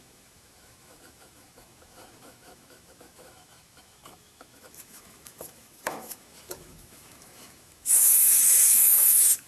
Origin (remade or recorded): remade